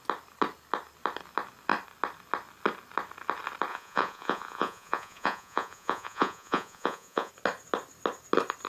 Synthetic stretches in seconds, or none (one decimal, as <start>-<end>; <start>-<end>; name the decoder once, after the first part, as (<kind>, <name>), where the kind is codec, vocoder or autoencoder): 3.7-7.3 (vocoder, Vocos)